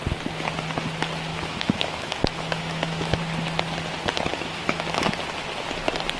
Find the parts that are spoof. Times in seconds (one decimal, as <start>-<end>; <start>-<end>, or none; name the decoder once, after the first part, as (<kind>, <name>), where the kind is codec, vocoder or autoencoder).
1.3-3.2 (autoencoder, DAC-VAE); 4.3-5.1